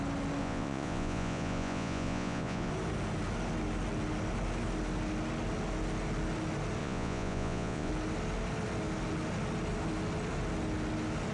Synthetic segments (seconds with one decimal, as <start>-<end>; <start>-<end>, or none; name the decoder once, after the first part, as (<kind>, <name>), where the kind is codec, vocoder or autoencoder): 0.4-2.7 (vocoder, Vocos); 6.8-7.9